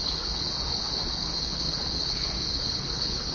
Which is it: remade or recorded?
remade